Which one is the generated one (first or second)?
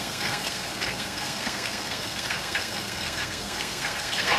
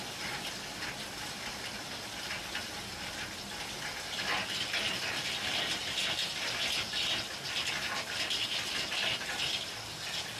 first